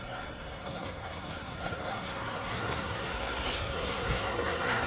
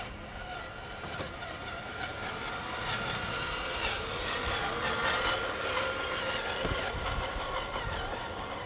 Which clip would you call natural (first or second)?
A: second